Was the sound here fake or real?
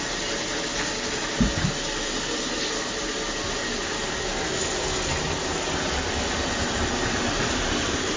real